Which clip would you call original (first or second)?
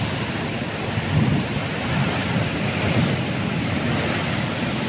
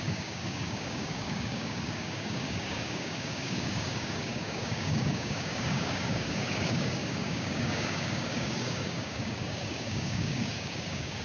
first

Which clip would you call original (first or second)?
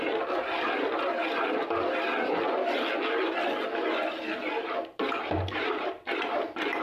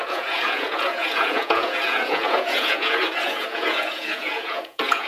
first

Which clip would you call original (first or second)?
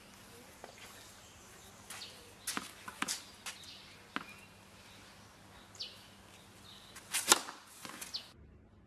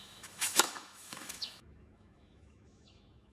first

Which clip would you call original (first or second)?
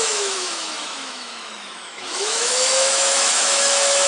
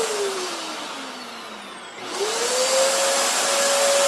second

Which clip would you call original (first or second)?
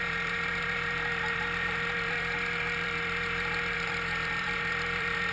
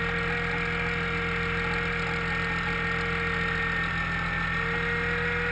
second